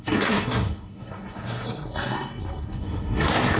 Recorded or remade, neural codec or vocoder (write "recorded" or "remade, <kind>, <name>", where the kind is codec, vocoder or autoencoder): remade, codec, SNAC